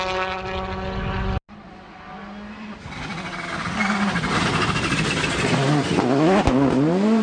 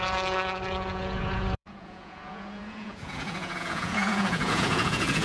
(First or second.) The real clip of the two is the first